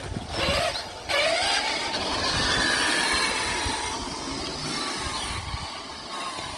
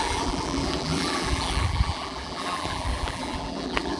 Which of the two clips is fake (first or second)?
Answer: second